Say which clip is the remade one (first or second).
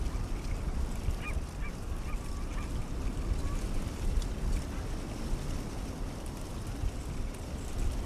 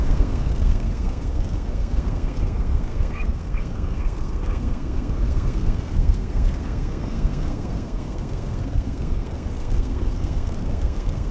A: second